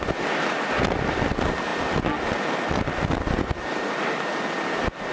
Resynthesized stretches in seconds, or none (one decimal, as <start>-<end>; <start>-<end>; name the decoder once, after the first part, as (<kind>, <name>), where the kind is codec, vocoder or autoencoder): none